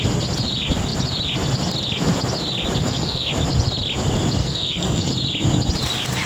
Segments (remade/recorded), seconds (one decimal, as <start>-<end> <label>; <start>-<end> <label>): 0.0-2.8 recorded; 2.8-3.3 remade; 3.3-4.4 recorded; 4.4-5.1 remade; 5.1-6.3 recorded